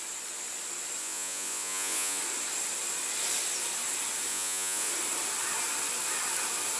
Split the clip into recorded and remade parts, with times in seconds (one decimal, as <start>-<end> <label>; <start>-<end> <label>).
0.0-1.0 recorded; 1.0-2.2 remade; 2.2-4.3 recorded; 4.3-4.9 remade; 4.9-6.8 recorded